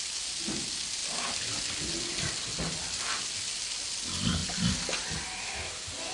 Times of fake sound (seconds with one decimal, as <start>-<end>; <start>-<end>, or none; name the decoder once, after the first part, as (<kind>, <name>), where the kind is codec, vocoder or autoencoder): none

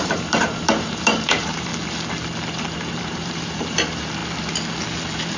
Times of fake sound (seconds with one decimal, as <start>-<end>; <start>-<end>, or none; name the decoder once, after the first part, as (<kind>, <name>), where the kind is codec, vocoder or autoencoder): 0.0-1.7 (vocoder, BigVGAN v2); 2.5-4.2

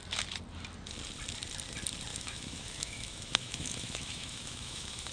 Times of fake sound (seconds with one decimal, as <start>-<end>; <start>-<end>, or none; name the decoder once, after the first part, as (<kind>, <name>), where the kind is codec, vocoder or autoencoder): 2.1-5.1 (autoencoder, DAC-VAE)

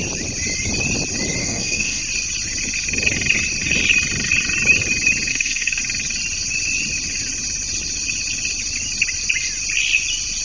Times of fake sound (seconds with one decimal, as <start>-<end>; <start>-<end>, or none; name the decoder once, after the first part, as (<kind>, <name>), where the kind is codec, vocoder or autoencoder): 1.4-2.0 (codec, SNAC); 5.3-5.8

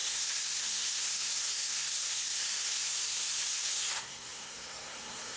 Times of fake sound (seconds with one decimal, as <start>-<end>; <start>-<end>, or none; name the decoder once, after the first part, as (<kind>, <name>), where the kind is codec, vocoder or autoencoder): 0.0-5.4 (codec, SNAC)

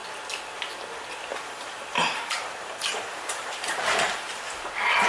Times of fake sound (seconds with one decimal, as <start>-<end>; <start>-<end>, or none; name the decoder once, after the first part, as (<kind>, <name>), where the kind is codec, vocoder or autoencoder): 1.3-4.4 (vocoder, BigVGAN v2)

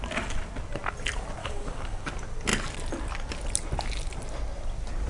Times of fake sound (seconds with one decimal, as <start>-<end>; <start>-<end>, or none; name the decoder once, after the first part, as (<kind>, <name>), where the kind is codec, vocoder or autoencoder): 1.4-2.1 (codec, DAC)

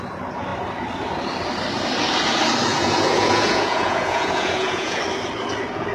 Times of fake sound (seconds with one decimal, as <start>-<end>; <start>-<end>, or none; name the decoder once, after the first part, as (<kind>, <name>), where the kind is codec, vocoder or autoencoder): 2.7-5.0 (vocoder, Vocos)